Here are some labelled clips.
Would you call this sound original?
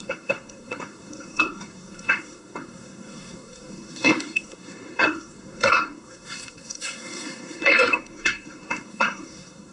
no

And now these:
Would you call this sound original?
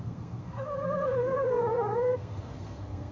no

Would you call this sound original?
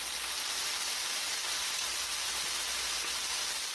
yes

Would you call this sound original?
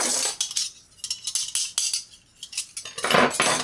yes